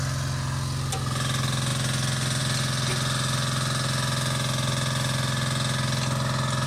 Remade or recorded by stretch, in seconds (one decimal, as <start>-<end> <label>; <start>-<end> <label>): 0.0-6.7 recorded